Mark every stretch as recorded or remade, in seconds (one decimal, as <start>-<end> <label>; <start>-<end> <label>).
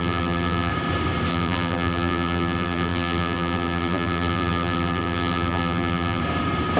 0.0-0.7 remade; 0.7-1.3 recorded; 1.3-6.2 remade; 6.2-6.8 recorded